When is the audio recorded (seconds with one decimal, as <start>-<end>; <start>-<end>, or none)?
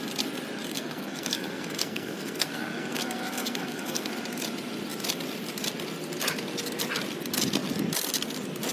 0.0-0.7; 4.1-8.7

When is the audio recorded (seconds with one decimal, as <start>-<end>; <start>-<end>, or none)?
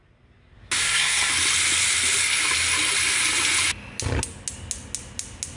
0.0-0.8; 1.3-5.6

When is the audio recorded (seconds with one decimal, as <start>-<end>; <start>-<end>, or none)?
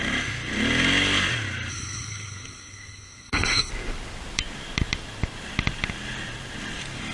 0.0-1.7; 3.7-7.1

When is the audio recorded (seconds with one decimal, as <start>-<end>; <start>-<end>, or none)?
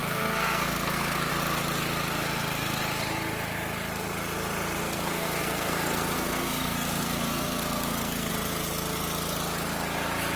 1.3-4.8; 8.3-10.4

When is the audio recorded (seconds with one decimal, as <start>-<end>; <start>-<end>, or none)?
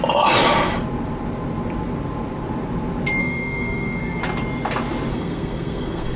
0.0-3.2; 4.2-5.1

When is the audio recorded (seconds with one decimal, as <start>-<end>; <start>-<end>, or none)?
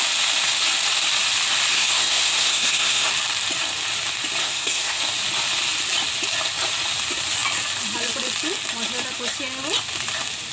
0.0-1.7; 3.1-4.4; 5.0-10.5